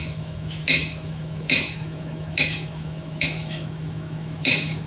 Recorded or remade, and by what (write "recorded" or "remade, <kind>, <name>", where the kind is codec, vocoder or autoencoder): remade, autoencoder, DAC-VAE